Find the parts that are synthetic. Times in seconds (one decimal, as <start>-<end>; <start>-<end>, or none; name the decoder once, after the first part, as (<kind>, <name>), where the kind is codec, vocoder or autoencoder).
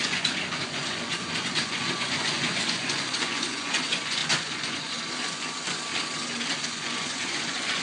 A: 0.0-5.9 (vocoder, Vocos); 6.6-7.8